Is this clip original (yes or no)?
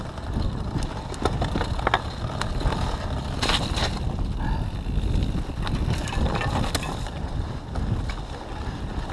yes